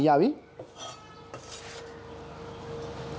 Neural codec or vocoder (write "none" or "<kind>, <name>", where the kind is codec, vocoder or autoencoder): none